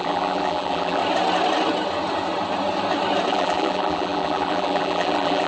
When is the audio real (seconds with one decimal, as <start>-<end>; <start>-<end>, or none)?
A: 1.0-3.3